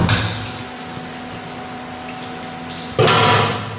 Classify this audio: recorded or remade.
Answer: recorded